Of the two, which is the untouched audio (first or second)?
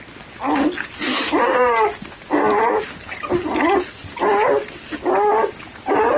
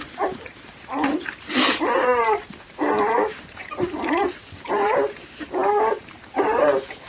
first